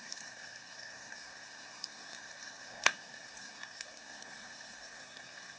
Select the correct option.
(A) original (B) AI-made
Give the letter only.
B